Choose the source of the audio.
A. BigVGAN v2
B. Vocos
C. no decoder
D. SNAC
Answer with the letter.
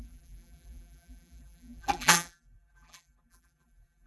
A